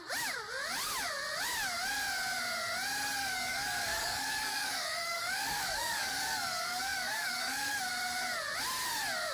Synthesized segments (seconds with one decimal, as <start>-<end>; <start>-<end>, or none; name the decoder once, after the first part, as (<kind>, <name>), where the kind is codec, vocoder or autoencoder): 3.2-7.8 (codec, DAC)